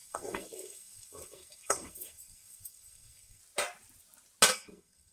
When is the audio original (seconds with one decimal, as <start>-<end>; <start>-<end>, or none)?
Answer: 3.4-4.5